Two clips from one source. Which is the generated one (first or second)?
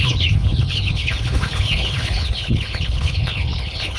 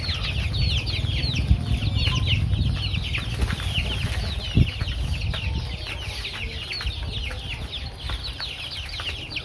first